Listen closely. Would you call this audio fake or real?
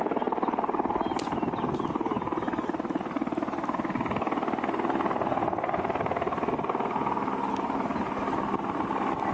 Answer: real